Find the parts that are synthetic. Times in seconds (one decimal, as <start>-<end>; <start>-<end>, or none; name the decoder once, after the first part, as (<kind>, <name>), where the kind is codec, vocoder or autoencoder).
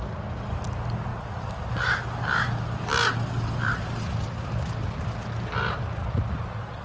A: none